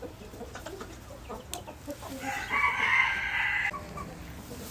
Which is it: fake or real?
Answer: real